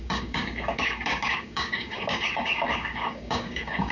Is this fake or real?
fake